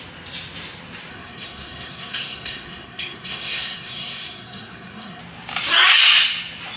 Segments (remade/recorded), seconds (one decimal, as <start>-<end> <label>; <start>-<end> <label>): 0.0-1.1 recorded; 1.1-5.2 remade; 5.2-6.8 recorded